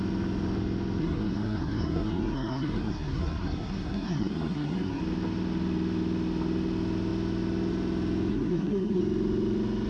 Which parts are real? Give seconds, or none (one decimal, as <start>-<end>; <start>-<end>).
0.0-1.0; 5.0-8.3; 9.0-9.9